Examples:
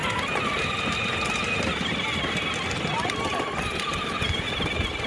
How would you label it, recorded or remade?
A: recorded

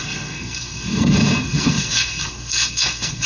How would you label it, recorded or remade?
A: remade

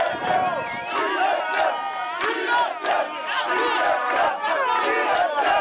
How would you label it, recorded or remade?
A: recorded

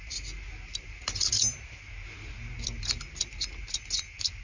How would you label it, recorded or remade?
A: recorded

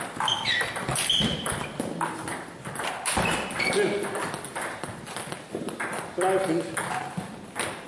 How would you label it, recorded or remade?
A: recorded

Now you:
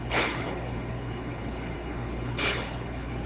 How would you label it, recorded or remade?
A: remade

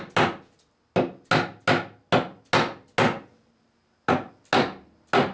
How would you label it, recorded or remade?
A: recorded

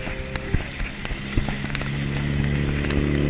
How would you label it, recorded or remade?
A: recorded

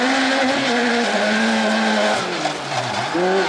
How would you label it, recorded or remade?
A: recorded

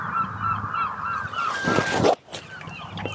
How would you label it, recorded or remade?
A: recorded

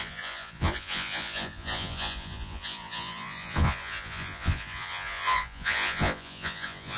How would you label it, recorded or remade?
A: remade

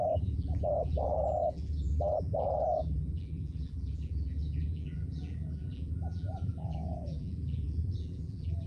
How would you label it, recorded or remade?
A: remade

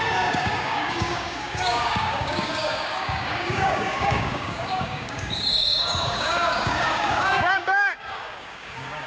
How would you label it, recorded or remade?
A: remade